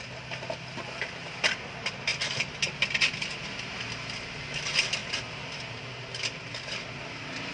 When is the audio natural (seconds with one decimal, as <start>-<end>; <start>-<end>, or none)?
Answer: 0.0-7.5